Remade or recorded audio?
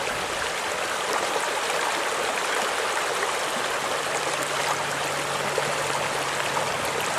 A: recorded